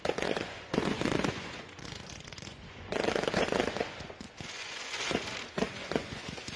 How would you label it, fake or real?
fake